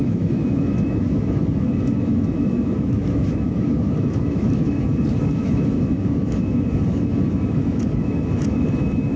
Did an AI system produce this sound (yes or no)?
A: yes